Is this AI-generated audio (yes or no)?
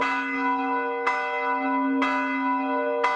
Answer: no